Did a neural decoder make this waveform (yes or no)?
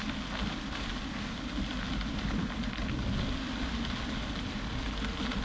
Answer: no